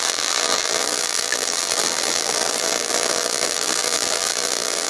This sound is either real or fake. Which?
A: fake